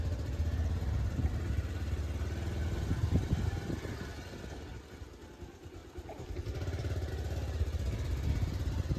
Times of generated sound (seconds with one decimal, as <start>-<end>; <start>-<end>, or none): 5.8-7.1